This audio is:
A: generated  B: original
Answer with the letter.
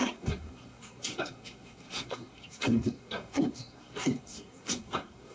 A